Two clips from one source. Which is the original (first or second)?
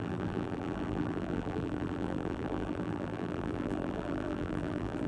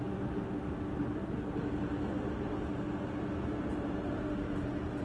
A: second